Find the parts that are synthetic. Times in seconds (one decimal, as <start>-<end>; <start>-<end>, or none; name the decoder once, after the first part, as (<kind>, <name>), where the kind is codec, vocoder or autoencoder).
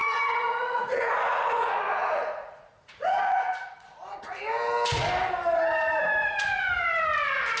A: 0.0-4.4 (vocoder, Vocos); 6.2-6.7